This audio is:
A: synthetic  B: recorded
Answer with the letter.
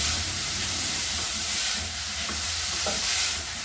A